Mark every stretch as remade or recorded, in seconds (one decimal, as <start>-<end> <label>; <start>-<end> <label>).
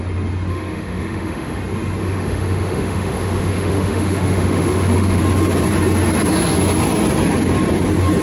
0.0-0.5 recorded; 0.5-1.6 remade; 1.6-2.0 recorded; 2.0-5.2 remade; 5.2-8.2 recorded